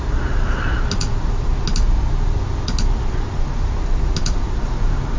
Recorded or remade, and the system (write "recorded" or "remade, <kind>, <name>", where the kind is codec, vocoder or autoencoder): recorded